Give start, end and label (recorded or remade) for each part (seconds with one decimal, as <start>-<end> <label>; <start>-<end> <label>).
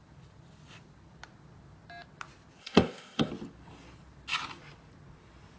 0.0-2.6 recorded; 2.6-3.3 remade; 3.3-5.6 recorded